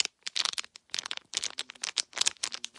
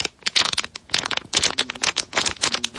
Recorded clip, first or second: first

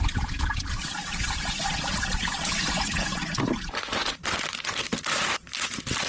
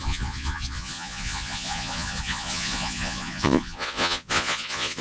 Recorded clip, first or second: first